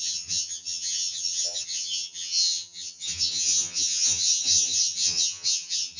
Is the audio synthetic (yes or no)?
yes